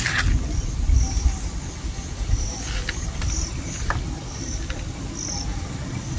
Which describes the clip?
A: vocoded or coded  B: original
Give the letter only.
B